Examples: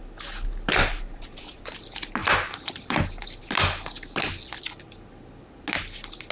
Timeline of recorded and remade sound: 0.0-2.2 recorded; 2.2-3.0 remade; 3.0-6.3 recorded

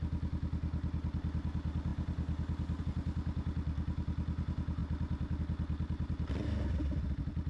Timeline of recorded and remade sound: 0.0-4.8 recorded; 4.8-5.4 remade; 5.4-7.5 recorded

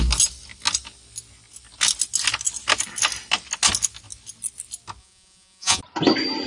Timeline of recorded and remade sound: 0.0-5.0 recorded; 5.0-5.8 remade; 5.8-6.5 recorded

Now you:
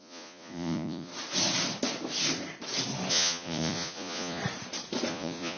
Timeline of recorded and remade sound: 0.0-1.1 remade; 1.1-3.1 recorded; 3.1-4.4 remade; 4.4-5.1 recorded; 5.1-5.6 remade